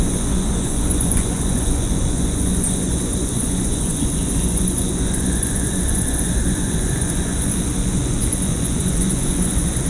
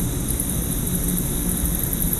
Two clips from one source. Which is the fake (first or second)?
first